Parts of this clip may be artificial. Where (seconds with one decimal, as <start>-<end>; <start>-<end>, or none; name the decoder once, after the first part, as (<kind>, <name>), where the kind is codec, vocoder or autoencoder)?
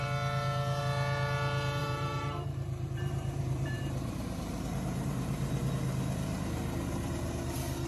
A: 1.8-5.7 (vocoder, BigVGAN v2)